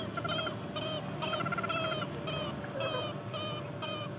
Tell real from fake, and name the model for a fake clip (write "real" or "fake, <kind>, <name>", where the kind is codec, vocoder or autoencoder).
real